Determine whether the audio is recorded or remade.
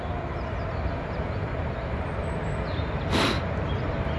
recorded